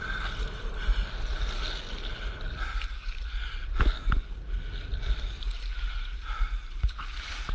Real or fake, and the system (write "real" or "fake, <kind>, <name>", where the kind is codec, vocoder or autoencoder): real